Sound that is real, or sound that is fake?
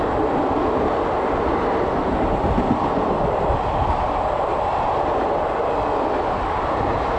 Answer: real